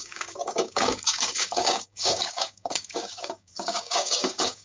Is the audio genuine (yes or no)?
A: no